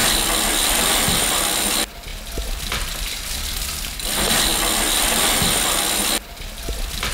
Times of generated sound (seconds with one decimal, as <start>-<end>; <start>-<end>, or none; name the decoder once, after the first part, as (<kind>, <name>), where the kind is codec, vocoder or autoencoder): none